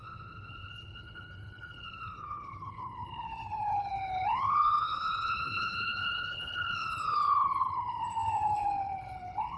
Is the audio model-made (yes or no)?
yes